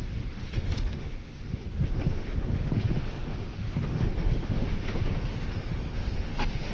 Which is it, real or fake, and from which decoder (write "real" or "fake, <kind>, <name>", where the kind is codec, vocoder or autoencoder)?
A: fake, autoencoder, DAC-VAE